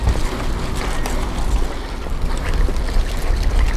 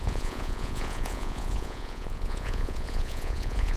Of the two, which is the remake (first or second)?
second